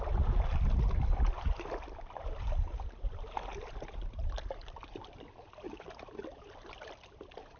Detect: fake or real real